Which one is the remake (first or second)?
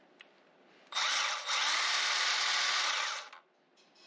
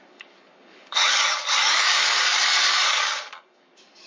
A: second